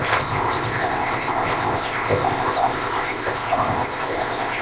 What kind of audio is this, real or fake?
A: fake